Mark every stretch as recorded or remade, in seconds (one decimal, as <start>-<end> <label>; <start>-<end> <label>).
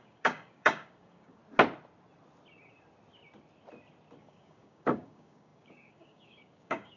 0.0-1.4 remade; 1.4-4.2 recorded; 4.2-7.0 remade